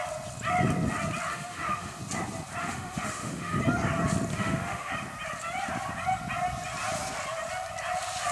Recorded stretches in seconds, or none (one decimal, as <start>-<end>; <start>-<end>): 0.0-1.3; 2.0-2.6; 3.6-4.3; 4.9-8.3